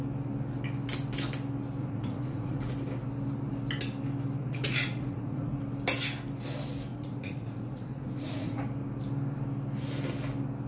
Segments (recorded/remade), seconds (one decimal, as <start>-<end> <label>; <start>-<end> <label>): 0.0-1.8 recorded; 1.8-2.7 remade; 2.7-4.4 recorded; 4.4-5.6 remade; 5.6-6.9 recorded; 6.9-8.6 remade; 8.6-10.7 recorded